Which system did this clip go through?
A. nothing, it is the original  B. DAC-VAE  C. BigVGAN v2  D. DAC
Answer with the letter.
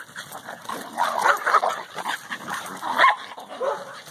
A